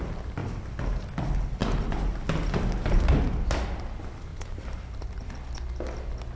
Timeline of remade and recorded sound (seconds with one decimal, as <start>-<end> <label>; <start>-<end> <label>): 0.0-4.3 recorded; 4.3-5.3 remade; 5.3-6.4 recorded